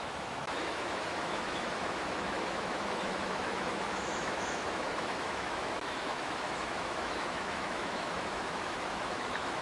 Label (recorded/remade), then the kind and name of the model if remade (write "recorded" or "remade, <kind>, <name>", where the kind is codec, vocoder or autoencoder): remade, autoencoder, DAC-VAE